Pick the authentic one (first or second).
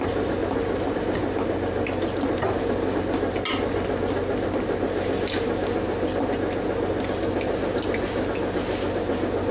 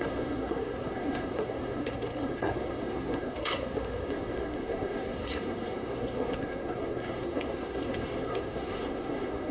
first